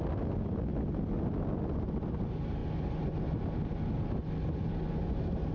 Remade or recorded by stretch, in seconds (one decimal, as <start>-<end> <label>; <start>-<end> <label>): 0.0-5.5 recorded